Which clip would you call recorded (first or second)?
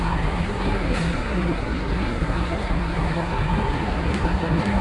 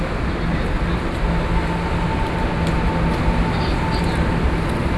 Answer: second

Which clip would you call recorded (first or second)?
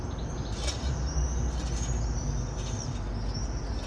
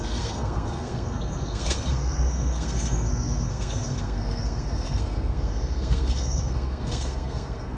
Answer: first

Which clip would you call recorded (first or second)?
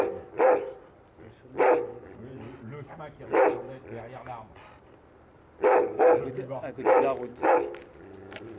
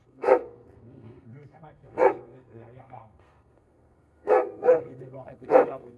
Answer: first